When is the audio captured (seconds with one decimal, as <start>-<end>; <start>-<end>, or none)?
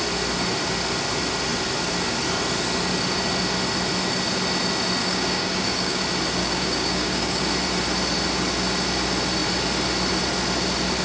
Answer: 0.0-5.0; 6.0-6.4; 7.5-11.0